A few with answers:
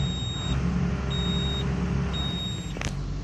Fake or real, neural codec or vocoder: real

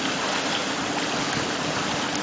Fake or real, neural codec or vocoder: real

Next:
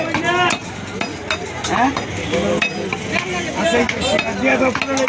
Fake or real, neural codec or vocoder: real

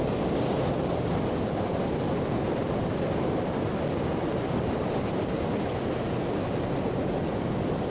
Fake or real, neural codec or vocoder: real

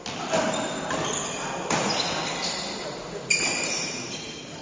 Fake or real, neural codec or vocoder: real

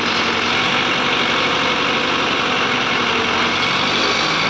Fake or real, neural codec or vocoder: real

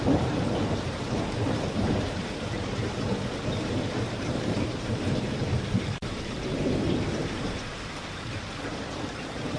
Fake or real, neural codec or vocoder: fake, vocoder, BigVGAN v2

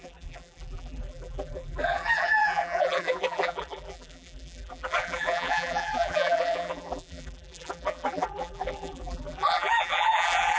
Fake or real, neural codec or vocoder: fake, vocoder, BigVGAN v2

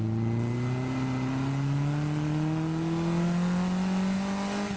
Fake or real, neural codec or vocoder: real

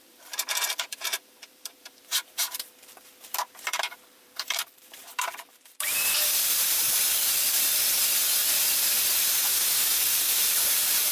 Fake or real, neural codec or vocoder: fake, vocoder, BigVGAN v2